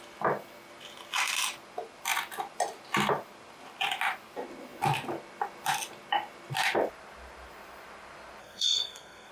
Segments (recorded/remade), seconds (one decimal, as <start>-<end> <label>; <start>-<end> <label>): 0.0-8.4 recorded; 8.4-9.3 remade